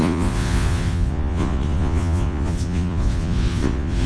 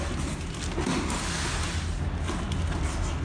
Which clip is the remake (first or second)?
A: first